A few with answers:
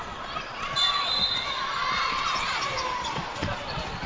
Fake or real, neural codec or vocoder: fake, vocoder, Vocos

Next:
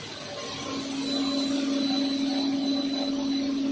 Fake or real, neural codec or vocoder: real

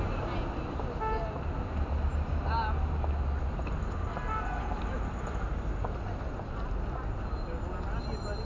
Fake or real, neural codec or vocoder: real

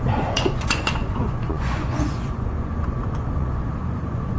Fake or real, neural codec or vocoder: fake, vocoder, Vocos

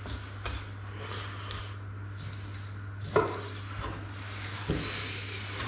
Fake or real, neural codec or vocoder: real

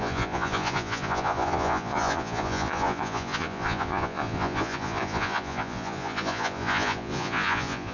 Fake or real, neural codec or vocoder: fake, vocoder, Vocos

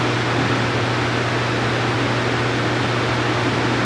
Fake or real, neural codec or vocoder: real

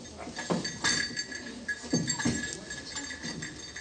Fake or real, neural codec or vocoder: real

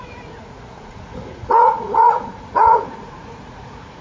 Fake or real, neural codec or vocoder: fake, vocoder, Vocos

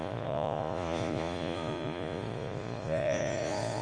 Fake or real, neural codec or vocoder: fake, vocoder, Vocos